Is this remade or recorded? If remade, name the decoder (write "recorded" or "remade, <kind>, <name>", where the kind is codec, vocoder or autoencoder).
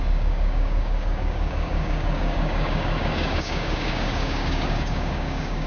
remade, codec, DAC